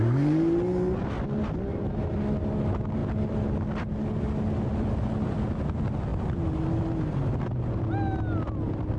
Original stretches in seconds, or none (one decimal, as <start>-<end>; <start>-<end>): 0.0-9.0